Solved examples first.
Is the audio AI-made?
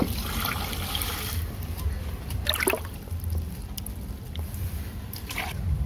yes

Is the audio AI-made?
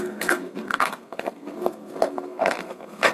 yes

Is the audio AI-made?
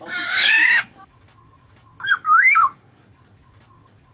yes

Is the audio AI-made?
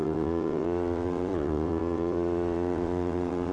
yes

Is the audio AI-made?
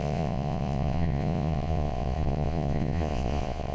yes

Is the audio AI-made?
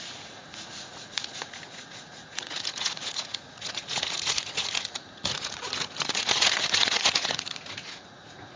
yes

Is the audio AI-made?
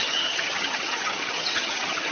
yes